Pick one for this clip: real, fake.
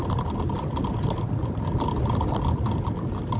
real